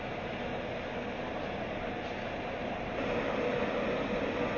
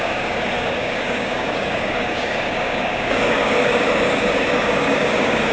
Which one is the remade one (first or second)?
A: second